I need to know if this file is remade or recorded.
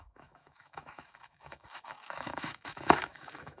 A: remade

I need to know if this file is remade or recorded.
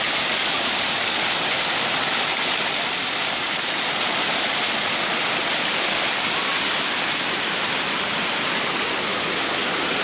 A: recorded